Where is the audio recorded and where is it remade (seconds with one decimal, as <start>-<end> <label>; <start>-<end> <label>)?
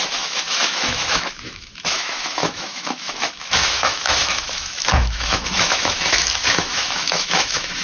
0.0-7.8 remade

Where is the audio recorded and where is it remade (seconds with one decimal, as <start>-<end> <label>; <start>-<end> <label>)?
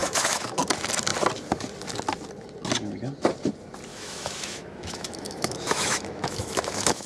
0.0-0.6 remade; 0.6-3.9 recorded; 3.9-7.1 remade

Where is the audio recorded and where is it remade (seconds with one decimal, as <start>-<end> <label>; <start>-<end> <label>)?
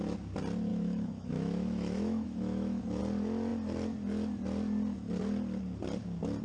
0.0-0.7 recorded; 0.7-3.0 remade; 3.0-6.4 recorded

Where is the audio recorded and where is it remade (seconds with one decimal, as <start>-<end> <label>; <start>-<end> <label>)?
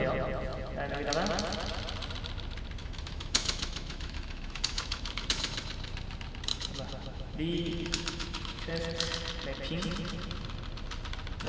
0.0-2.8 recorded; 2.8-5.7 remade; 5.7-6.5 recorded; 6.5-8.7 remade; 8.7-11.5 recorded